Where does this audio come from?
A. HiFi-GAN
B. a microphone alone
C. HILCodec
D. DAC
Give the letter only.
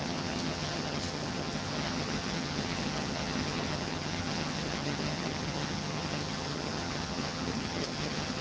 A